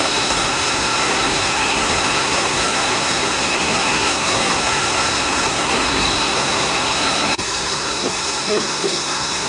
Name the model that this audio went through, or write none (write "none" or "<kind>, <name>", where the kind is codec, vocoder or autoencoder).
codec, SNAC